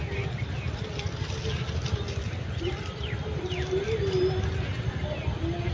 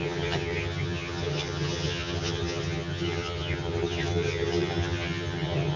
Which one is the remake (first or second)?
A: second